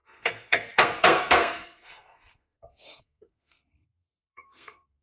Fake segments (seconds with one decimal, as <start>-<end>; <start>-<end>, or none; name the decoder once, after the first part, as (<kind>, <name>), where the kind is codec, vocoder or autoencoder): 0.0-5.0 (codec, SNAC)